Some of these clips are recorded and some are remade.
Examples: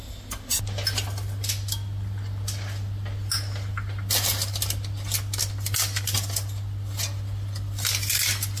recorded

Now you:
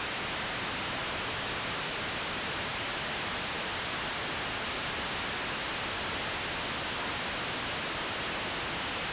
recorded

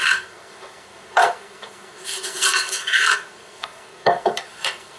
remade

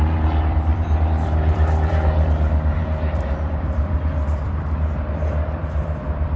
remade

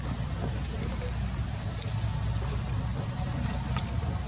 recorded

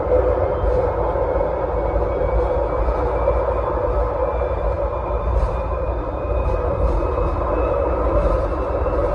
recorded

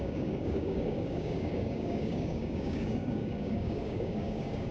remade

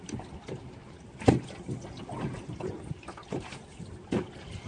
recorded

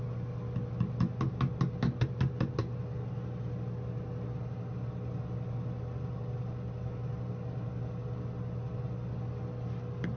recorded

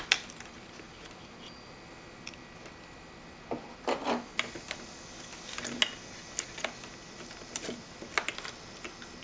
recorded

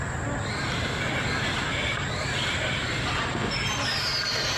recorded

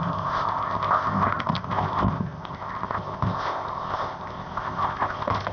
remade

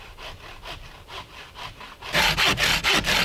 recorded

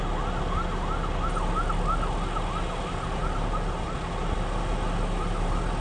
recorded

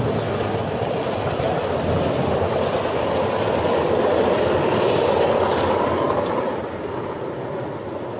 recorded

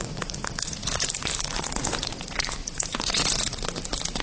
remade